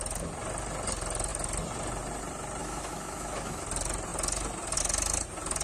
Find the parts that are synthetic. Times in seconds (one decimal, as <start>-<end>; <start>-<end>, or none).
2.6-3.6